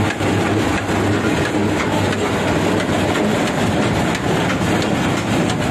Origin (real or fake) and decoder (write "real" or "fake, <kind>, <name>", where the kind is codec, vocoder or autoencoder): real